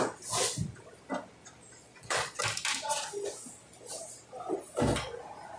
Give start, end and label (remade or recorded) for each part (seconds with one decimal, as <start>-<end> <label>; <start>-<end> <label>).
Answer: 0.0-1.8 recorded; 1.8-2.4 remade; 2.4-5.6 recorded